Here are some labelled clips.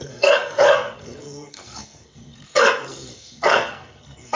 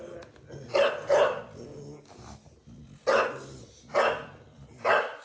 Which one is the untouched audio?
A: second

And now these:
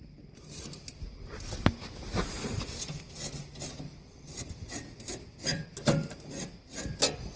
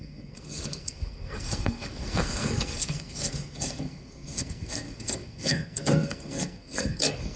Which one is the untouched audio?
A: first